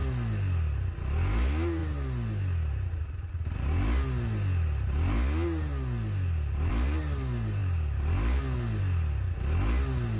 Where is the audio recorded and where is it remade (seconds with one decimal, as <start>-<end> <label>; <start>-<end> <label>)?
0.0-10.2 recorded